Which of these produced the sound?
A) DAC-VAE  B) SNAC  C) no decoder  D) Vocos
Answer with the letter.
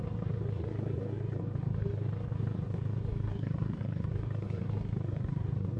B